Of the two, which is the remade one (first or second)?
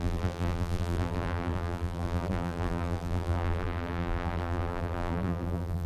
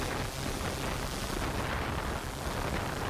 first